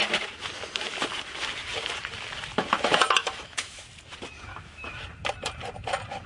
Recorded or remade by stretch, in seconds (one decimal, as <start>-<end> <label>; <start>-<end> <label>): 0.0-3.2 recorded; 3.2-3.9 remade; 3.9-4.5 recorded; 4.5-5.0 remade; 5.0-6.3 recorded